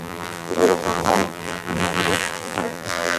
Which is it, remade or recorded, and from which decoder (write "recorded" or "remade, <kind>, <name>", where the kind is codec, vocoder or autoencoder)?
remade, vocoder, BigVGAN v2